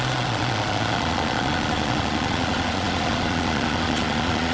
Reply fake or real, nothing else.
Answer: fake